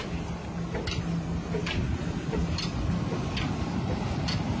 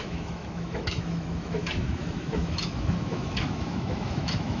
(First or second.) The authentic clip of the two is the first